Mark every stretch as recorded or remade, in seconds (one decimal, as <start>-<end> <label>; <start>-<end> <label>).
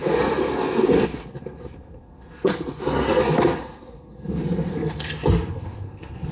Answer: 0.0-6.3 remade